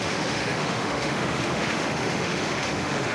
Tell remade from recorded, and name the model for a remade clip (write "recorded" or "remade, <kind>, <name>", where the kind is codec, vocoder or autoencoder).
remade, autoencoder, DAC-VAE